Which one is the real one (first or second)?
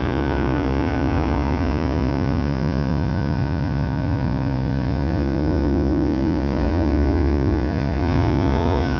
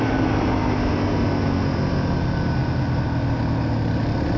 second